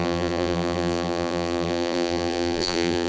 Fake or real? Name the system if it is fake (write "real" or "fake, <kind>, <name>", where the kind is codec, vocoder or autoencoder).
fake, vocoder, BigVGAN v2